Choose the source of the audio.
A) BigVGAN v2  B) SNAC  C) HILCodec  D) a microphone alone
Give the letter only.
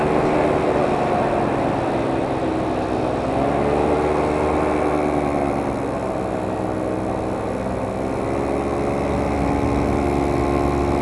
D